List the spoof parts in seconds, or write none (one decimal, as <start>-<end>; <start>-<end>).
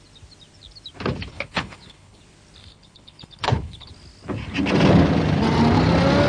1.3-2.2; 2.6-3.9